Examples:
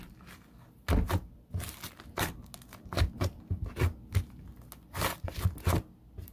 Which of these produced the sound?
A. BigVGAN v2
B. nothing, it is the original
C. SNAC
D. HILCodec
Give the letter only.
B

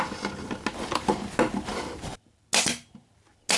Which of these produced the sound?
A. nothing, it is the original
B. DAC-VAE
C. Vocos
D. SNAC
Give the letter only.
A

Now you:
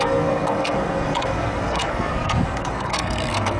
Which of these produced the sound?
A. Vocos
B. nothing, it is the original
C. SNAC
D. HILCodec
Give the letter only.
C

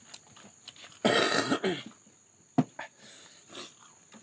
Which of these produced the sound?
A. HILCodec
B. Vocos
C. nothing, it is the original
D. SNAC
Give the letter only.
C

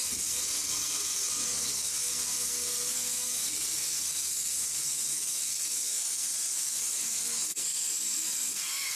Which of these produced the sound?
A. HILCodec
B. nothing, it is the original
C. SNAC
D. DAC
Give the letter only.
C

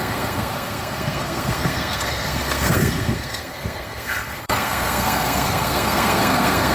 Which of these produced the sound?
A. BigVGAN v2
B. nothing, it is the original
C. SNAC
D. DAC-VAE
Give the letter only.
C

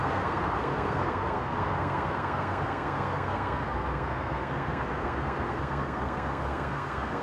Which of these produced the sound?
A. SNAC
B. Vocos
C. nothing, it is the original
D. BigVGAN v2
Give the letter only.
A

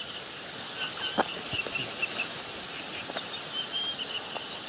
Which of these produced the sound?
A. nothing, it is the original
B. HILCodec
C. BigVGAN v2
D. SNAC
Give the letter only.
A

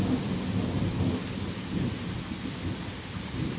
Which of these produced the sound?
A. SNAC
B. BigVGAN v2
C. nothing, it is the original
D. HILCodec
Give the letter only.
C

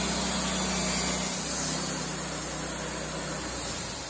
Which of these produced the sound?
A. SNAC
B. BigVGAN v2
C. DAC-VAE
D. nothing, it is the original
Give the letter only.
D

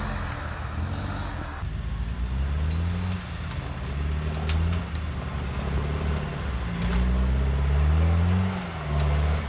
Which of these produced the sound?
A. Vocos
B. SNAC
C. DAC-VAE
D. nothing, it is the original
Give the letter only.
D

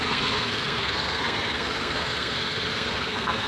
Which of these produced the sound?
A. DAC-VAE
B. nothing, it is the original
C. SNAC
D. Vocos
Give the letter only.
C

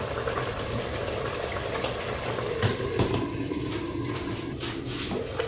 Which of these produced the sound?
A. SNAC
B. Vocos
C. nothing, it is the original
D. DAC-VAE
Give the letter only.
C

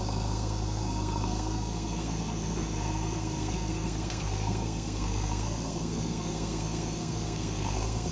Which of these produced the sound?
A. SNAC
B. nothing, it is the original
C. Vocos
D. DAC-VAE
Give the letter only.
A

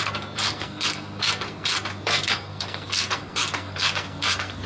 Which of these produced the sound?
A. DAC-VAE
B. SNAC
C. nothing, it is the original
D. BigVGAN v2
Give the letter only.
B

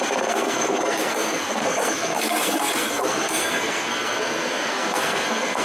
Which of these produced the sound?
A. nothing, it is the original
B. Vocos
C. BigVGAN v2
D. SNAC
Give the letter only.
D